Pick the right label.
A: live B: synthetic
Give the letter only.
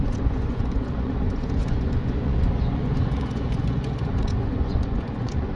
B